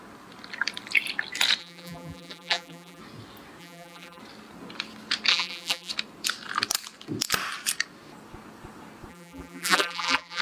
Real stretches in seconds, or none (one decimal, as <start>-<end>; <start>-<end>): 0.0-1.6; 3.0-3.6; 4.2-5.3; 5.9-9.1